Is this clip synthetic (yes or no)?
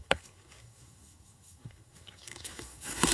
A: yes